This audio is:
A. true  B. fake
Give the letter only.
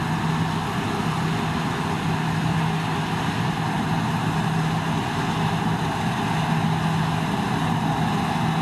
A